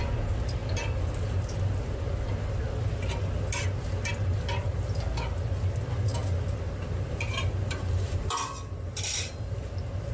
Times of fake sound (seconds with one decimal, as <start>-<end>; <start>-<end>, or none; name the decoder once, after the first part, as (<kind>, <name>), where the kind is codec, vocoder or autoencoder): none